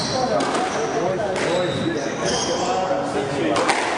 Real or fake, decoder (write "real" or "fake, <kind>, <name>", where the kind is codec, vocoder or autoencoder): real